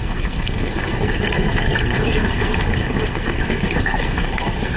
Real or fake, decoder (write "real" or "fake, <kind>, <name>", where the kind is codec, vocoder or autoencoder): fake, codec, SNAC